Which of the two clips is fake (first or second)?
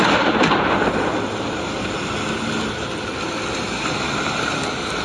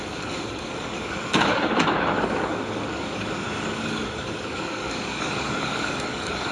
second